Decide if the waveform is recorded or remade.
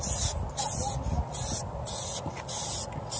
recorded